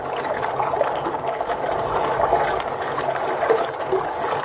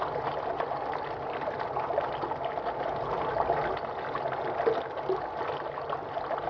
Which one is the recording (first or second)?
second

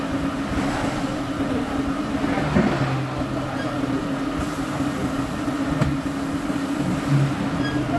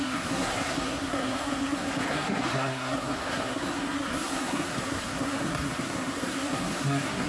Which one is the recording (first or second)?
first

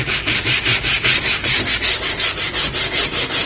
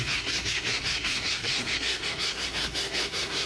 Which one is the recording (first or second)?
first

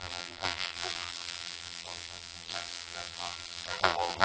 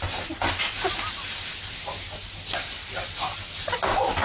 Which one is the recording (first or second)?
second